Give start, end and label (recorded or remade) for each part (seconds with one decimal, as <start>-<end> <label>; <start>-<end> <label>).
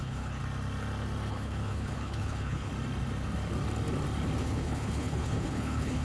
0.0-0.4 remade; 0.4-1.3 recorded; 1.3-2.7 remade; 2.7-4.4 recorded; 4.4-6.0 remade